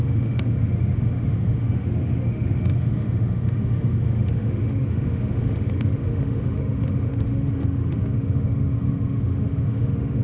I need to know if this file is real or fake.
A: fake